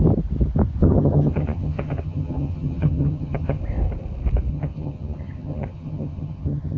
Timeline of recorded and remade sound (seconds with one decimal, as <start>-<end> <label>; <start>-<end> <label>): 0.0-0.8 recorded; 0.8-3.6 remade; 3.6-4.5 recorded; 4.5-6.8 remade